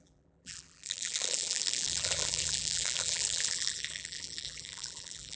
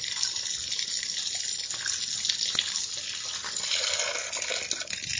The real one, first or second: second